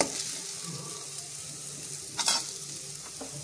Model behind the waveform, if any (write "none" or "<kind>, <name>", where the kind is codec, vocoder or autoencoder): none